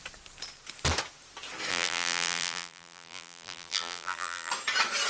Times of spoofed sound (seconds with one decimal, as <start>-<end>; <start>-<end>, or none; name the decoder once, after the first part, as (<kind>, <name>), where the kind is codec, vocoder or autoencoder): 1.7-4.5 (vocoder, BigVGAN v2)

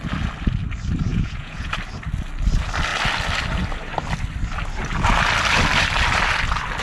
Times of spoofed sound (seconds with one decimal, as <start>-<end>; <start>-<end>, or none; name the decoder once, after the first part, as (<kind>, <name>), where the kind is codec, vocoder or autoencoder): 1.1-1.7 (vocoder, Vocos)

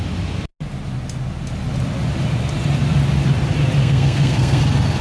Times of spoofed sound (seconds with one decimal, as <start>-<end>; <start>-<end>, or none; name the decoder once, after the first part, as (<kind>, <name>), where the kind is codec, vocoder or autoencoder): 3.8-4.6 (codec, SNAC)